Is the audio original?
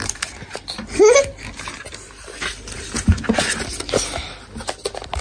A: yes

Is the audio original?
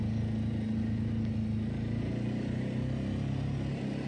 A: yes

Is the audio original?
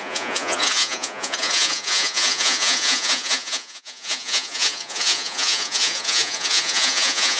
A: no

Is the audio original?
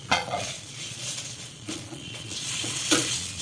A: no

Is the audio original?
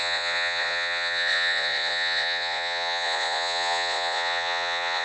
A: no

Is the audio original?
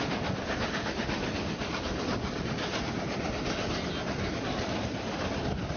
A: yes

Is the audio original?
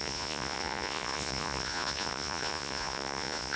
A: no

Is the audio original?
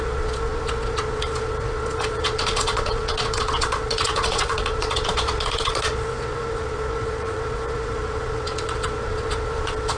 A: no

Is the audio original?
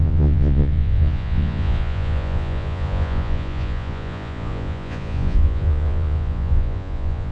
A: no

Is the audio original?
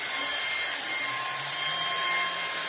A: yes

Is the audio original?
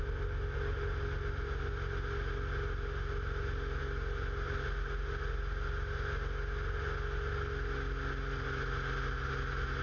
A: yes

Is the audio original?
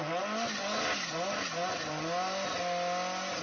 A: yes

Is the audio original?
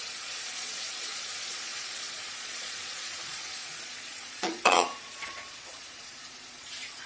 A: no